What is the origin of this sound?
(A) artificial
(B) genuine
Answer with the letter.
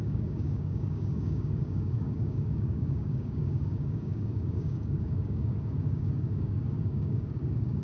A